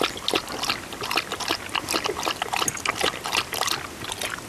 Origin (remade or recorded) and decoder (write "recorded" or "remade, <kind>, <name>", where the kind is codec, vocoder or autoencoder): recorded